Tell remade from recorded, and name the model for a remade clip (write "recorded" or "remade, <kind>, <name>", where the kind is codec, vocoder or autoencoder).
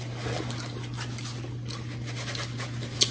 recorded